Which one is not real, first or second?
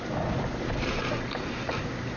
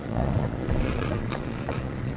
second